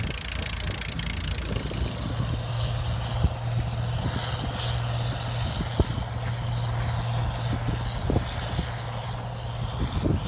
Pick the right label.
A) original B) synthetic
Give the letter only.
A